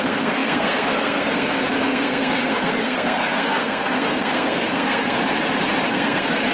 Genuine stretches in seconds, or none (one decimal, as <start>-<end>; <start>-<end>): 5.2-5.9